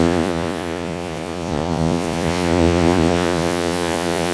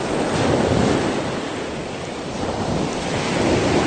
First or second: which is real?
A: second